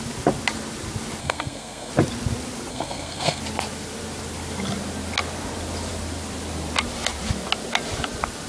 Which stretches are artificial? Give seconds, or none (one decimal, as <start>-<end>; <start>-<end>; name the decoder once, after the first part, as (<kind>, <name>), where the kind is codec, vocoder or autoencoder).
1.2-1.9 (codec, SNAC); 2.7-3.4